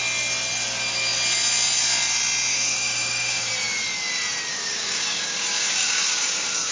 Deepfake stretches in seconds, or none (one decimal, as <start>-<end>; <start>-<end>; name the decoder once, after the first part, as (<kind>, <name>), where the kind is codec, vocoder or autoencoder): 2.5-3.5 (codec, DAC); 4.5-6.7